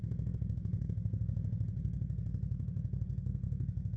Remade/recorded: remade